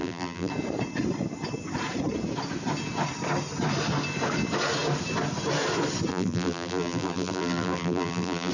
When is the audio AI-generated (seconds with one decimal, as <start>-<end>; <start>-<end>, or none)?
0.0-0.5; 6.1-8.5